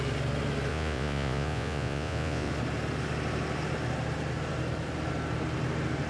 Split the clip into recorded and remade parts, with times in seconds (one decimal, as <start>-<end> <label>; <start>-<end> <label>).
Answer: 0.0-0.7 recorded; 0.7-2.5 remade; 2.5-6.1 recorded